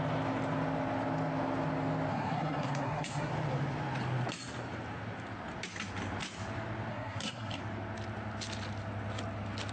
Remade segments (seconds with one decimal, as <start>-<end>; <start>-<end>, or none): 2.1-3.3; 6.9-7.6